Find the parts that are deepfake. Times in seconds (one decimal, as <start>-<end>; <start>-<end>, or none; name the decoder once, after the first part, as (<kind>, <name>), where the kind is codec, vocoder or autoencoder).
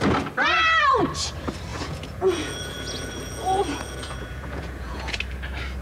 1.7-5.2 (vocoder, Vocos)